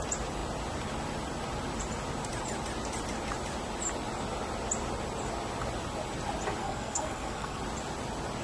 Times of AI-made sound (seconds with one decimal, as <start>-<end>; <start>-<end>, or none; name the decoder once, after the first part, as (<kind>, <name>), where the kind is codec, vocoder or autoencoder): 6.6-7.6 (codec, SNAC)